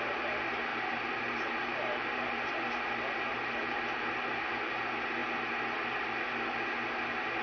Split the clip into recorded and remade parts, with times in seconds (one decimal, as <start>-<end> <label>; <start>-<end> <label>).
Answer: 0.0-0.7 recorded; 0.7-2.5 remade; 2.5-3.3 recorded; 3.3-4.8 remade; 4.8-7.4 recorded